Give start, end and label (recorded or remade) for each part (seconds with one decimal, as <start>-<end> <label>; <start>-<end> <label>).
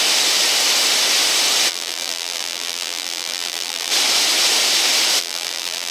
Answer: 0.0-1.7 recorded; 1.7-3.9 remade; 3.9-5.2 recorded; 5.2-5.9 remade